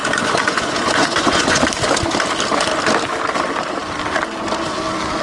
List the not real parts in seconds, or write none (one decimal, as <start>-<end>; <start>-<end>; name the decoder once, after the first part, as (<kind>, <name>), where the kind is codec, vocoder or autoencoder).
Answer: 0.0-1.6 (vocoder, Vocos)

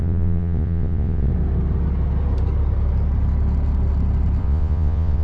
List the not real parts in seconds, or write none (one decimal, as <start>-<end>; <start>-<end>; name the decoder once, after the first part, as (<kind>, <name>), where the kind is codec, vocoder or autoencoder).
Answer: 0.0-1.3 (vocoder, Vocos); 4.4-5.2

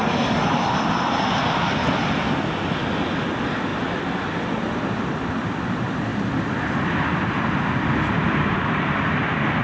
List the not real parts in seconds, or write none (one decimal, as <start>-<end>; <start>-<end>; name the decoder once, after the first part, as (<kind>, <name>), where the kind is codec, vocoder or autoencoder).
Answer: none

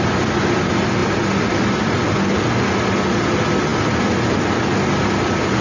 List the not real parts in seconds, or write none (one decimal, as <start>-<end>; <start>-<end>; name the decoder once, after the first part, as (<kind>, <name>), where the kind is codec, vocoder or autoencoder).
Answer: none

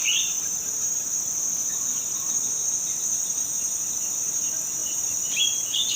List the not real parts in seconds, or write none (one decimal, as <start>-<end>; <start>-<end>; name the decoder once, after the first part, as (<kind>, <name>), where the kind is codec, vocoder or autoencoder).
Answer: 4.8-5.4 (vocoder, BigVGAN v2)

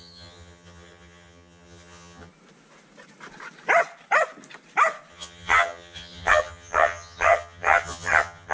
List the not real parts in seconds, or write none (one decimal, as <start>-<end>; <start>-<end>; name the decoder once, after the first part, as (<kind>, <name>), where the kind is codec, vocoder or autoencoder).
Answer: 0.0-2.3 (vocoder, HiFi-GAN); 5.1-8.5